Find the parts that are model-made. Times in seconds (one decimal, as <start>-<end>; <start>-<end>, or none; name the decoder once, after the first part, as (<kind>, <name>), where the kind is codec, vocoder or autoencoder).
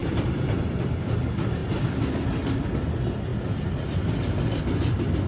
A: 0.0-0.8 (vocoder, BigVGAN v2); 1.6-2.6